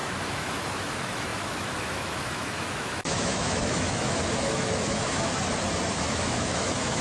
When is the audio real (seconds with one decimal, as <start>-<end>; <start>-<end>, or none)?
5.3-5.9